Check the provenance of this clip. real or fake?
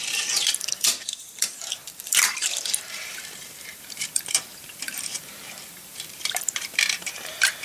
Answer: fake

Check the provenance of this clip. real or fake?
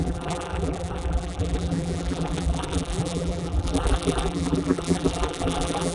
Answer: fake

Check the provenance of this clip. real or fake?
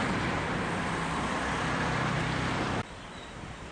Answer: fake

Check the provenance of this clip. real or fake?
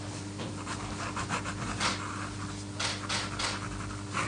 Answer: real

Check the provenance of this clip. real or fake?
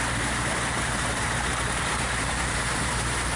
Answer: fake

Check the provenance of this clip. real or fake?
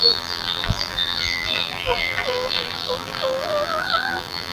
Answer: fake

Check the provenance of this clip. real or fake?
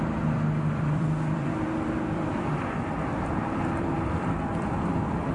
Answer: fake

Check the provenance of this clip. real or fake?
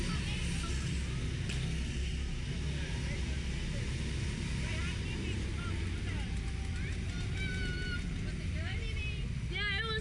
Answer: real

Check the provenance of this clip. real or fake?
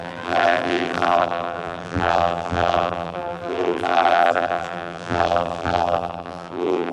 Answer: fake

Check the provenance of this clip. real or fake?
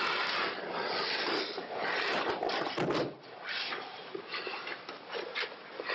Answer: fake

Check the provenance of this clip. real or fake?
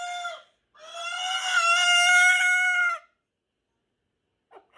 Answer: real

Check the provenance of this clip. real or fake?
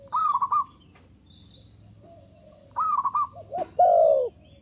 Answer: fake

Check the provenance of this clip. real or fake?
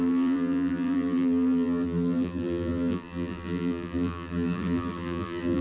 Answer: fake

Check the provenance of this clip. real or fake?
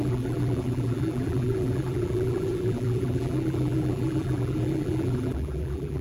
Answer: fake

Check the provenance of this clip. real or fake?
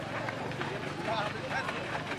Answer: real